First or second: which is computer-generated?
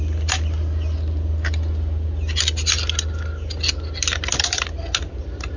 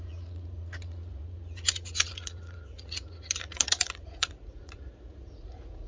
second